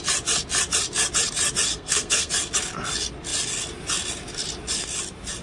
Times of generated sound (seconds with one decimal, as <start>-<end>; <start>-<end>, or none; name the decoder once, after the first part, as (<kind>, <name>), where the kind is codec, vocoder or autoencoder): 1.7-2.3 (codec, SNAC)